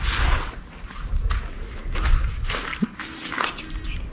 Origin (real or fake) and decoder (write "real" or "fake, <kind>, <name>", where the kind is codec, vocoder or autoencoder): real